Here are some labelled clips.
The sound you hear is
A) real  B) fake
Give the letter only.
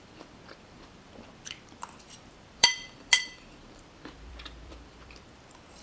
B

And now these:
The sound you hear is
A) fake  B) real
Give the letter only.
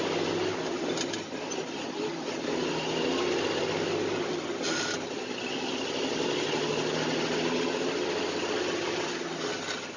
B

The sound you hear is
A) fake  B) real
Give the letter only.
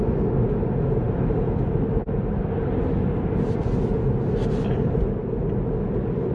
B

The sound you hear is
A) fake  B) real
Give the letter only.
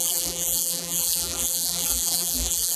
A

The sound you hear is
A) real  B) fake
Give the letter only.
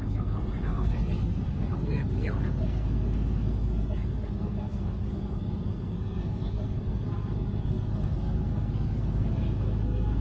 B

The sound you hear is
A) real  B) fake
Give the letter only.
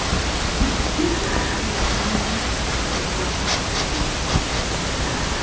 A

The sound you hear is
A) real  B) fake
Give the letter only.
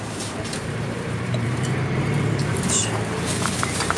B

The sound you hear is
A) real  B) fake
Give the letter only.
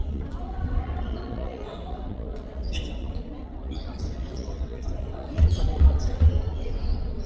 B